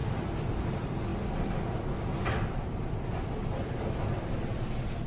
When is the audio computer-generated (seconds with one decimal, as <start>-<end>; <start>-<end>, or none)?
none